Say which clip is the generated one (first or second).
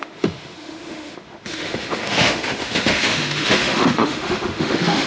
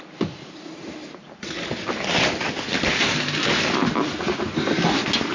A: first